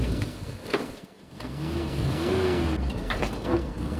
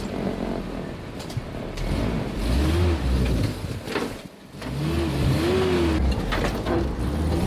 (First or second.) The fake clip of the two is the first